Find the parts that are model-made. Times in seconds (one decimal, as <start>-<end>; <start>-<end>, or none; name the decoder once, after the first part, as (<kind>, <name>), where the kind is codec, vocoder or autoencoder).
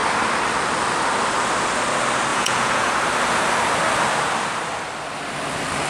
2.3-2.9 (vocoder, Vocos)